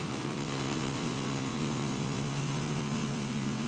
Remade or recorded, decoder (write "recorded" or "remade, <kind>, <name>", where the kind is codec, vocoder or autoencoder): remade, vocoder, WaveNeXt